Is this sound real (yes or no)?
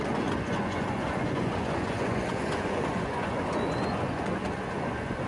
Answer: no